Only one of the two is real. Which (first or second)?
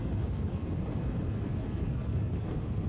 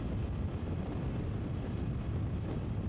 second